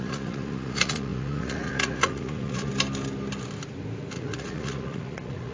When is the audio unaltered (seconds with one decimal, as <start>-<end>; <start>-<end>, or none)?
2.7-4.1